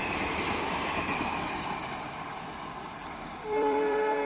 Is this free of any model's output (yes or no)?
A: no